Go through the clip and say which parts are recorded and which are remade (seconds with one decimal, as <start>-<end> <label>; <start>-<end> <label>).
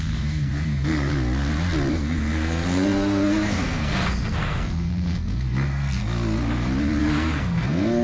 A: 0.0-1.1 remade; 1.1-1.9 recorded; 1.9-6.0 remade; 6.0-7.0 recorded; 7.0-8.0 remade